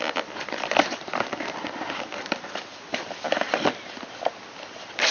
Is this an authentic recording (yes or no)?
no